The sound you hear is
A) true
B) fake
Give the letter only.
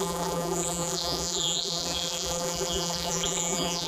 B